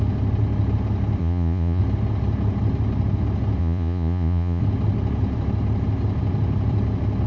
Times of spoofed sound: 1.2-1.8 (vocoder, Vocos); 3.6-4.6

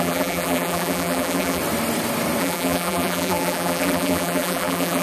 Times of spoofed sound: 0.0-1.6 (vocoder, BigVGAN v2); 2.4-5.0